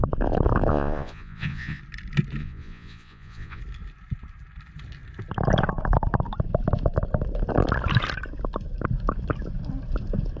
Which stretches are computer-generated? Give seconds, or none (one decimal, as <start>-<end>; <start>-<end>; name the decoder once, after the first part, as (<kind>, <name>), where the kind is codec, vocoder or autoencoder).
0.7-1.8 (vocoder, Vocos); 2.4-3.6